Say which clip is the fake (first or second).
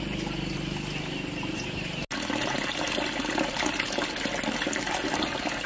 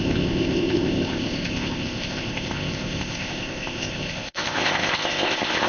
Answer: second